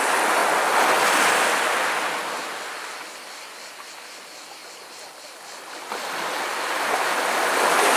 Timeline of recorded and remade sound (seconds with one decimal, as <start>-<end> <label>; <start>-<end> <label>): 0.0-8.0 recorded